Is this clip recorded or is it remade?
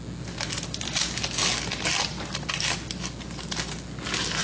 recorded